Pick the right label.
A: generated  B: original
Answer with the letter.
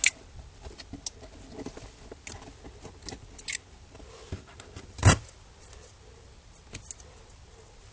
B